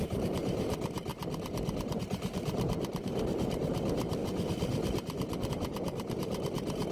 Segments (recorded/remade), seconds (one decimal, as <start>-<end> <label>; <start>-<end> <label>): 0.0-1.1 remade; 1.1-2.0 recorded; 2.0-4.2 remade; 4.2-5.5 recorded; 5.5-6.9 remade